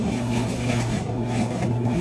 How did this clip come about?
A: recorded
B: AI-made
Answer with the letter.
B